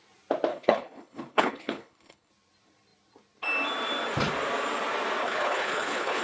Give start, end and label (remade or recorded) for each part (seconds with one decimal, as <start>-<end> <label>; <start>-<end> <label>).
0.0-0.5 recorded; 0.5-2.3 remade; 2.3-5.2 recorded; 5.2-6.2 remade